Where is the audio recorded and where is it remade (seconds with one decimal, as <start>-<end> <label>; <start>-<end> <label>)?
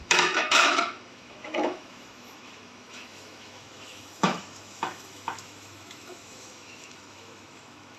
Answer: 0.0-8.0 remade